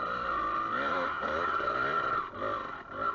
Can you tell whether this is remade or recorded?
recorded